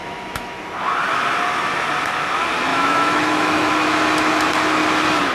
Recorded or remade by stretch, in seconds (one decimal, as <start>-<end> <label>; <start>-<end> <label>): 0.0-0.6 remade; 0.6-2.7 recorded; 2.7-3.7 remade; 3.7-5.3 recorded